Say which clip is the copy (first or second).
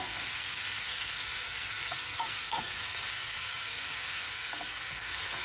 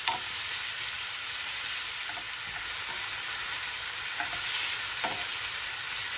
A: first